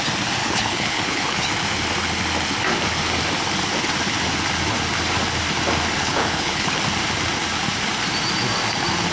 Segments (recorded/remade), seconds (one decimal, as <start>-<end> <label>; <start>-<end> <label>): 0.0-0.4 recorded; 0.4-1.5 remade; 1.5-6.0 recorded; 6.0-6.7 remade; 6.7-9.1 recorded